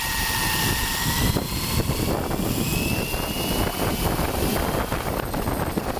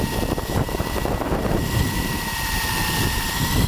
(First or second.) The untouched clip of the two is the first